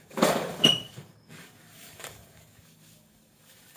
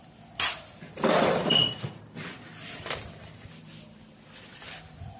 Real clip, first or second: second